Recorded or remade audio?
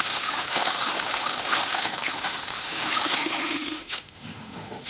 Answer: remade